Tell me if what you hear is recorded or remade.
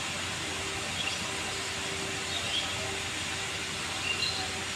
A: recorded